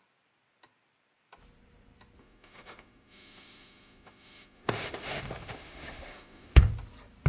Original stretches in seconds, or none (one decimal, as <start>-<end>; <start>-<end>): 0.0-2.2; 6.6-7.3